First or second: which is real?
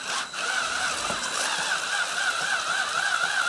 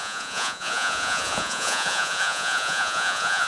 first